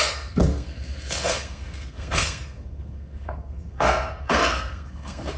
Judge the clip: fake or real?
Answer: fake